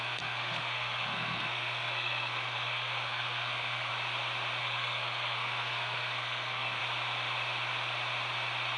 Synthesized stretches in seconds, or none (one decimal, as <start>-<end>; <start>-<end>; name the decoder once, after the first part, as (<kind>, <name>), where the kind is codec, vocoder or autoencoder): 0.0-3.9 (codec, SNAC); 4.6-6.8